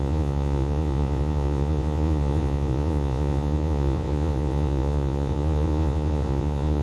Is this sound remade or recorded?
remade